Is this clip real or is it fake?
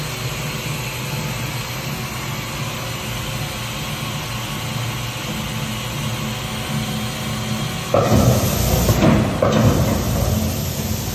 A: real